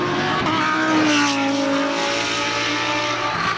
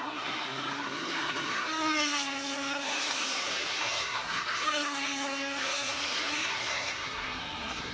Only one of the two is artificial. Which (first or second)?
second